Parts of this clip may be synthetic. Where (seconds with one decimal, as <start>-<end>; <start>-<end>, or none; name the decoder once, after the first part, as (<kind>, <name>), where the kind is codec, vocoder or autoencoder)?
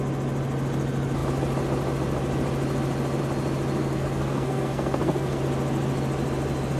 3.8-5.4 (codec, SNAC)